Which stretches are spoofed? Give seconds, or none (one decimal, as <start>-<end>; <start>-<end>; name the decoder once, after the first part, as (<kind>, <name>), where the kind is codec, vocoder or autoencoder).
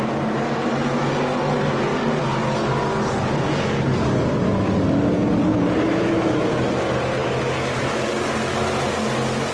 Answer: none